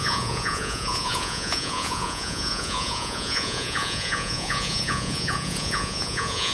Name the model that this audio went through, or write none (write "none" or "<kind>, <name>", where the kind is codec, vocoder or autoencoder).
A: vocoder, Vocos